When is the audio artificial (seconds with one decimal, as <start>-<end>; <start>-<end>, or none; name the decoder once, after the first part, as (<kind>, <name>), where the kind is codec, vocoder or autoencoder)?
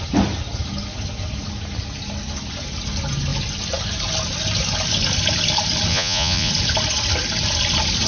5.9-6.5 (vocoder, Vocos)